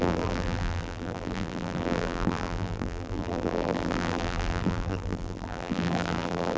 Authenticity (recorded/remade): remade